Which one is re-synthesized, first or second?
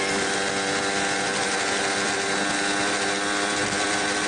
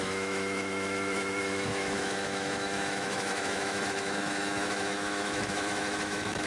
second